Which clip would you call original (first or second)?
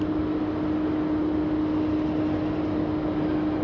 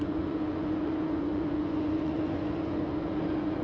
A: first